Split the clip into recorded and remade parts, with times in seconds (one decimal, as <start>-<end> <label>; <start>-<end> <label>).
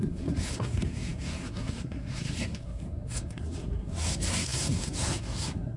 0.0-5.8 remade